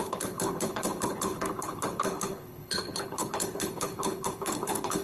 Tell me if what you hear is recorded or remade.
remade